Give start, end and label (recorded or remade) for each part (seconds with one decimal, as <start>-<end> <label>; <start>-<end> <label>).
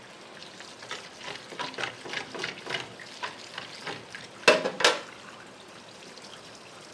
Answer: 0.0-6.9 recorded